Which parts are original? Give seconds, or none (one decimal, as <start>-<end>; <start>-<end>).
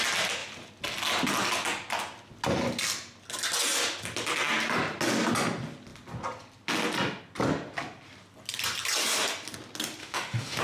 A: 0.0-10.0